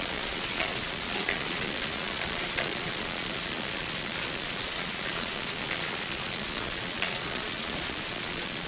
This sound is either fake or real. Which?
fake